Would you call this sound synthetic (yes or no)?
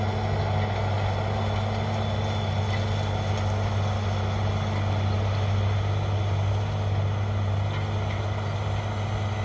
no